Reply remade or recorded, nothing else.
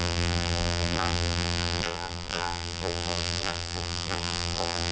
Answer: remade